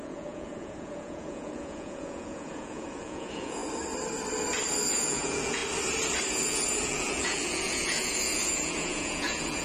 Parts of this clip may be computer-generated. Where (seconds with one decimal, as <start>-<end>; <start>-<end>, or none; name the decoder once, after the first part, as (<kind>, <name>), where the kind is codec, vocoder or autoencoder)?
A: 0.0-3.6 (vocoder, Vocos); 4.9-5.6; 6.3-9.6